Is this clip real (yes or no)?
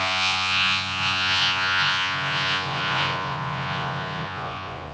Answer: no